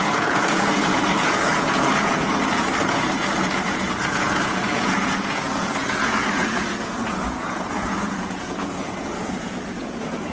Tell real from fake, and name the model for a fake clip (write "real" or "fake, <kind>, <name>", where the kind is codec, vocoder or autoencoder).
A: fake, vocoder, Vocos